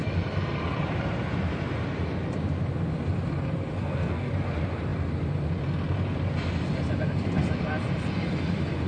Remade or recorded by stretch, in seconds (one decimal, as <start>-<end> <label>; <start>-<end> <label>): 0.0-3.8 recorded; 3.8-4.3 remade; 4.3-8.9 recorded